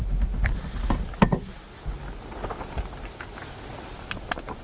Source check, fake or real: real